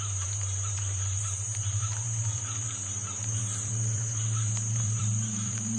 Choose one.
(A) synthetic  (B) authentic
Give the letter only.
A